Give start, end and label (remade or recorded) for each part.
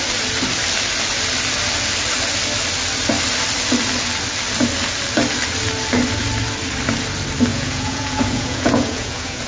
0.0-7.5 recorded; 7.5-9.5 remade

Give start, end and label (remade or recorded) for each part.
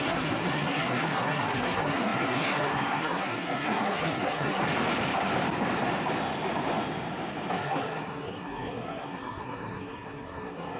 0.0-4.6 remade; 4.6-7.5 recorded; 7.5-10.8 remade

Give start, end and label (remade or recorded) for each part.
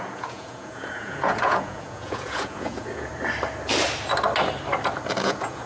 0.0-3.1 remade; 3.1-5.1 recorded; 5.1-5.7 remade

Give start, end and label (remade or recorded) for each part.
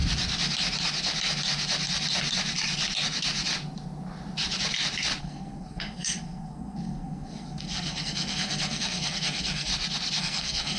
0.0-5.2 recorded; 5.2-9.7 remade; 9.7-10.2 recorded; 10.2-10.8 remade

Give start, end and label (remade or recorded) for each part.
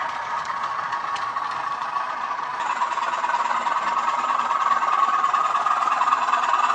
0.0-1.4 remade; 1.4-2.1 recorded; 2.1-2.5 remade; 2.5-3.9 recorded; 3.9-6.7 remade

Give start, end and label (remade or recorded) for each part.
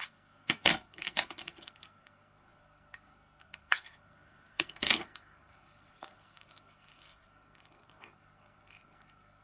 0.0-9.4 remade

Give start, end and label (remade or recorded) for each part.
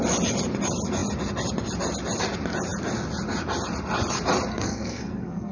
0.0-4.5 recorded; 4.5-5.5 remade